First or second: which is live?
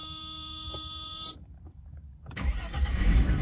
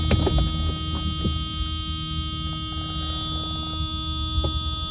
second